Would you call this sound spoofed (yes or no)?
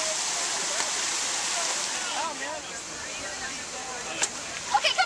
no